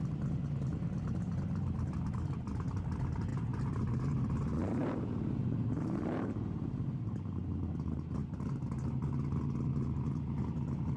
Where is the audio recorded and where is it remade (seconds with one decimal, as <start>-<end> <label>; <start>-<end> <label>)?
0.0-11.0 remade